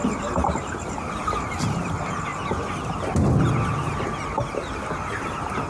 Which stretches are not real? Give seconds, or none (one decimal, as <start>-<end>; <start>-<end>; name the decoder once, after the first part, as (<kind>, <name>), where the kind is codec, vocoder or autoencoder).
0.0-2.3 (vocoder, BigVGAN v2); 5.0-5.7

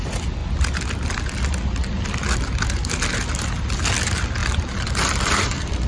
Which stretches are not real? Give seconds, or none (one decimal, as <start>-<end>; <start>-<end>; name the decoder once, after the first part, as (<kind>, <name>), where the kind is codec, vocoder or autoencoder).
4.4-5.9 (vocoder, BigVGAN v2)